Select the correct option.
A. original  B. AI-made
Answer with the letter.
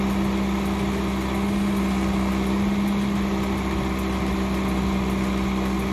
A